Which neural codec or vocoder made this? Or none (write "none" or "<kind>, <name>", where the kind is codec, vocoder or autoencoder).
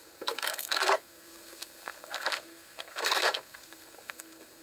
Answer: codec, SNAC